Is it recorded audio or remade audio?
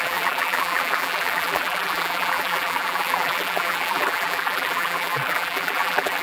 remade